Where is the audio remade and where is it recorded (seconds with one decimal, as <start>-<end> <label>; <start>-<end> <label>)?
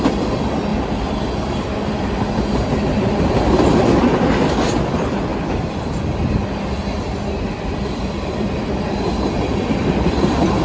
0.0-0.7 remade; 0.7-3.0 recorded; 3.0-5.3 remade; 5.3-7.5 recorded; 7.5-10.6 remade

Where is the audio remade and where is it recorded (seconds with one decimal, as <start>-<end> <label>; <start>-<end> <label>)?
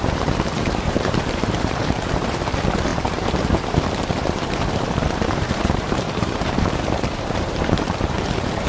0.0-8.7 remade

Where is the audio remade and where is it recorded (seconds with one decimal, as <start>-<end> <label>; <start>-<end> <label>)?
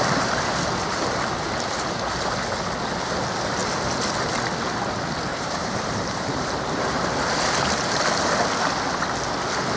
0.0-5.3 recorded; 5.3-6.7 remade; 6.7-9.8 recorded